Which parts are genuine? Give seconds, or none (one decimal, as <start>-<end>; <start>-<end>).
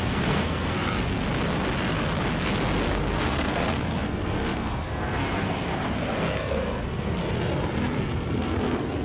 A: 1.2-2.9; 5.7-6.2; 7.2-8.0